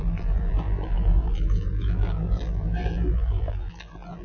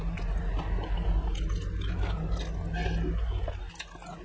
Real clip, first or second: second